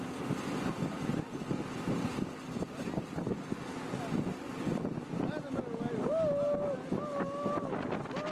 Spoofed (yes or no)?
no